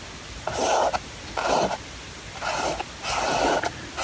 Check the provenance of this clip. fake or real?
real